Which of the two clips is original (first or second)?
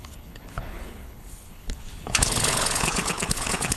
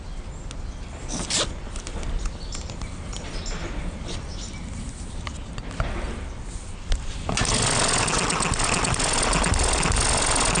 second